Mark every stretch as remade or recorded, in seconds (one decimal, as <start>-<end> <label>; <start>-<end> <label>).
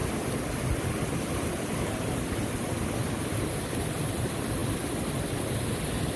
0.0-6.2 recorded